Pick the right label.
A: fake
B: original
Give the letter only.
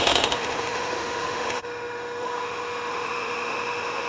A